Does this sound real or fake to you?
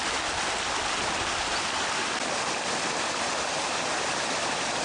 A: real